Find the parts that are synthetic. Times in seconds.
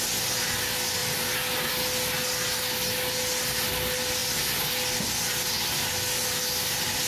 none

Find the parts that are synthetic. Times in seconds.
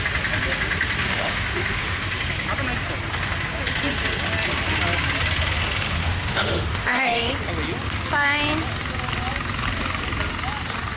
1.0-2.0; 6.0-7.3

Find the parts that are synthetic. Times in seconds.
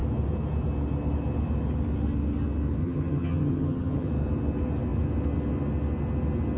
2.8-4.1